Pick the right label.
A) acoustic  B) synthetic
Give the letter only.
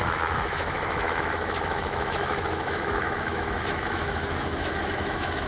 B